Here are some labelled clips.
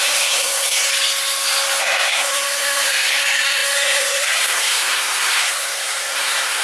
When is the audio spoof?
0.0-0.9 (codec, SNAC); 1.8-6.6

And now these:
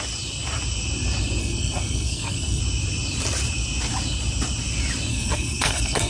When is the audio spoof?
1.4-2.6 (codec, SNAC); 5.1-6.1